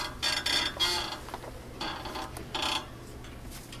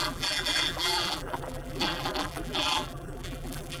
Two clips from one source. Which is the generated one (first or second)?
second